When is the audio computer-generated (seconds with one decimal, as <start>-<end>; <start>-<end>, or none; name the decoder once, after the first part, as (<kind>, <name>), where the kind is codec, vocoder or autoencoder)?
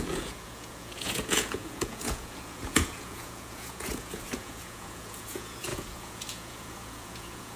0.0-7.6 (vocoder, Vocos)